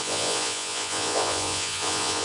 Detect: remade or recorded remade